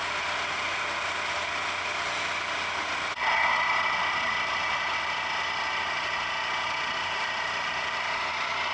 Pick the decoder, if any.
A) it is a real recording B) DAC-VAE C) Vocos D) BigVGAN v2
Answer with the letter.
A